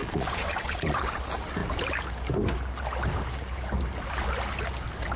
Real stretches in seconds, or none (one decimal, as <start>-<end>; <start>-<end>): 1.2-5.2